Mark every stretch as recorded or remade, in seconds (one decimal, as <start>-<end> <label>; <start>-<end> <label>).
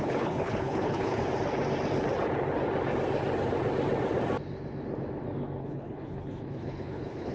0.0-1.2 remade; 1.2-5.6 recorded; 5.6-7.3 remade